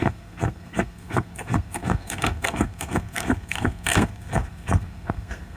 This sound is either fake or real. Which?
fake